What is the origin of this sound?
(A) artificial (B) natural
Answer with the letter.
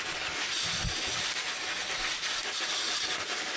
B